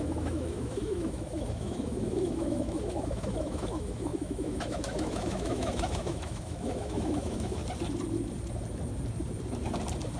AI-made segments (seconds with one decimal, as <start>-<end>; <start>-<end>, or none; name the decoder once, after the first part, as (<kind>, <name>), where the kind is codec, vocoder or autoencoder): 0.0-7.6 (autoencoder, DAC-VAE)